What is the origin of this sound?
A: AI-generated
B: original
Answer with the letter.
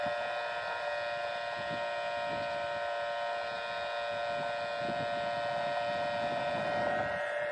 B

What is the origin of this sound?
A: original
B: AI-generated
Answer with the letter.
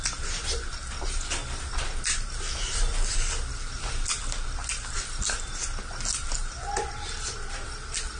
A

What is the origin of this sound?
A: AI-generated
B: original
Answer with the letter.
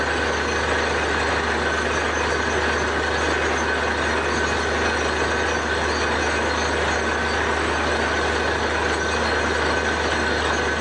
B